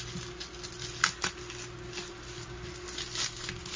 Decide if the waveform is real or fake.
real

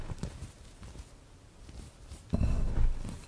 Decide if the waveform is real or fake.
real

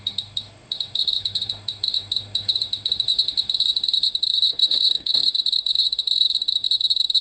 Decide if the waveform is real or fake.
fake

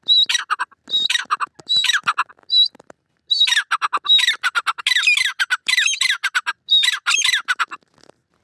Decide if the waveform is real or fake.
real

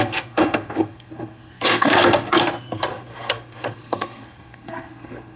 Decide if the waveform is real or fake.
fake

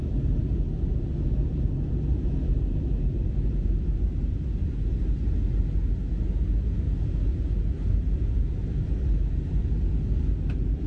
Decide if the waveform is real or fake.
real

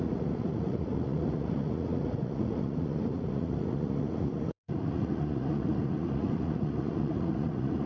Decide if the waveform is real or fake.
fake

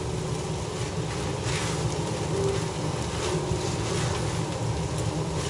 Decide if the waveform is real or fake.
real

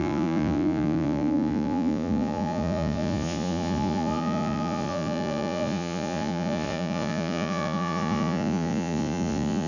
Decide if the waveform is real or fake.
fake